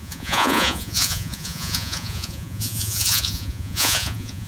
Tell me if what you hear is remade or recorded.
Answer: remade